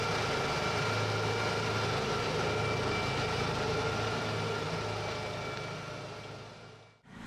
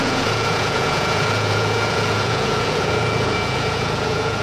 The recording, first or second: first